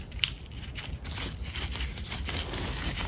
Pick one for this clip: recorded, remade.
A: recorded